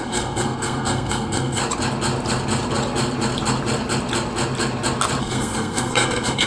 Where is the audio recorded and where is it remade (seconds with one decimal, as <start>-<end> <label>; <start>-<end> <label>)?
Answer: 0.0-1.6 remade; 1.6-5.2 recorded; 5.2-6.5 remade

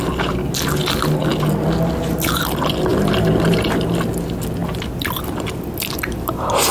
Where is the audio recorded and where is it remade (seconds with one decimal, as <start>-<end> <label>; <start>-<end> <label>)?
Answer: 0.0-2.9 recorded; 2.9-3.8 remade; 3.8-6.7 recorded

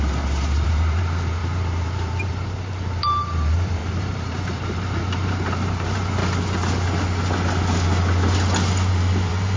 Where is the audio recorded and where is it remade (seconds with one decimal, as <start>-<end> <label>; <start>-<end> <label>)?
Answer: 0.0-6.2 remade; 6.2-8.9 recorded; 8.9-9.6 remade

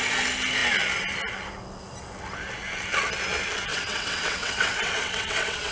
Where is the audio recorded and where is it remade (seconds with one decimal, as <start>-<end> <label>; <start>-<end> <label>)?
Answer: 0.0-3.7 recorded; 3.7-5.7 remade

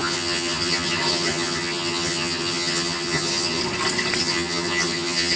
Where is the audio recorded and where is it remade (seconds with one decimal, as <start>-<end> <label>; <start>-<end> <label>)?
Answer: 0.0-3.6 remade; 3.6-4.2 recorded; 4.2-5.4 remade

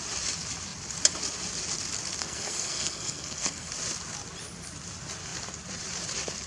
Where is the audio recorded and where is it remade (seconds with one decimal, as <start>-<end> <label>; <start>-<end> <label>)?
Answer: 0.0-2.2 recorded; 2.2-3.7 remade; 3.7-6.5 recorded

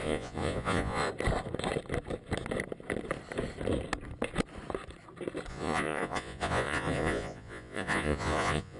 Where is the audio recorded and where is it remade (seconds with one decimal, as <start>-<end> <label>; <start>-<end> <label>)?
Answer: 0.0-1.1 remade; 1.1-5.5 recorded; 5.5-8.8 remade